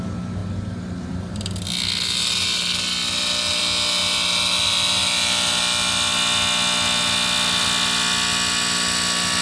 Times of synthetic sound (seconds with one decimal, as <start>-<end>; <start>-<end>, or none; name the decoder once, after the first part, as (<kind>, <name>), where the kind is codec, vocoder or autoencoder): none